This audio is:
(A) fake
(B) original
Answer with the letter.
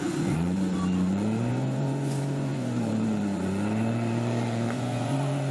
A